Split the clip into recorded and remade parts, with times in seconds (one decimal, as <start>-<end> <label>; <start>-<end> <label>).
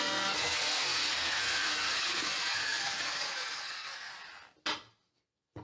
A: 0.0-4.1 remade; 4.1-5.1 recorded; 5.1-5.6 remade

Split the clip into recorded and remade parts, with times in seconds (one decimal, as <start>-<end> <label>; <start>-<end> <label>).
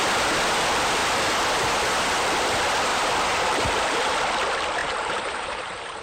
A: 0.0-2.9 recorded; 2.9-4.3 remade; 4.3-4.8 recorded; 4.8-6.0 remade